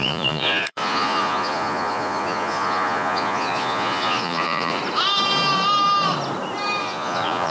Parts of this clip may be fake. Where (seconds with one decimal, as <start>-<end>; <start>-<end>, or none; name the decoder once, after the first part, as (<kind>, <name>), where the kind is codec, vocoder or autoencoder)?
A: 0.0-4.8 (vocoder, Vocos); 6.8-7.5